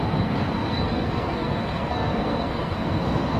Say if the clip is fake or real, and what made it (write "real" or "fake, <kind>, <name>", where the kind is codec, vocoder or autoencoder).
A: fake, codec, SNAC